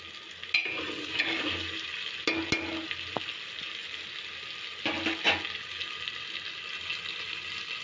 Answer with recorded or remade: recorded